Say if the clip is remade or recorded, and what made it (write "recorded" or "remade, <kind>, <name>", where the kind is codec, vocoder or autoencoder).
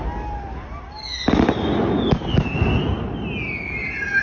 recorded